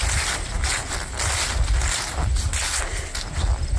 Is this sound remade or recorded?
recorded